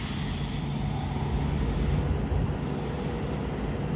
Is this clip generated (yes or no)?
no